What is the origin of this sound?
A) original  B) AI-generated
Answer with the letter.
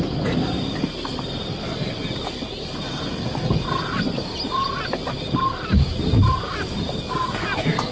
A